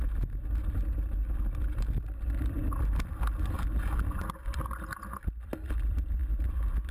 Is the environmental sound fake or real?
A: real